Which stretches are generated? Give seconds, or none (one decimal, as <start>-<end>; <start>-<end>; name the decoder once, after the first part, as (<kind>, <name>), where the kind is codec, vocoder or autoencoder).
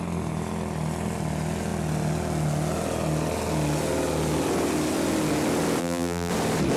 5.8-6.3 (vocoder, BigVGAN v2)